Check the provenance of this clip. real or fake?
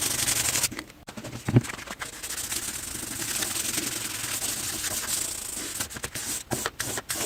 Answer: real